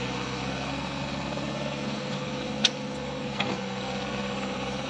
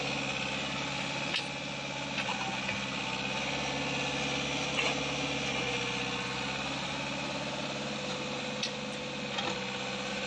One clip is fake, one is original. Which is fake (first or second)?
first